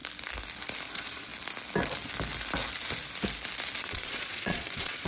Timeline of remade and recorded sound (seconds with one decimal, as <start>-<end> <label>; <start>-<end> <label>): 0.0-0.9 recorded; 0.9-1.3 remade; 1.3-3.8 recorded; 3.8-5.1 remade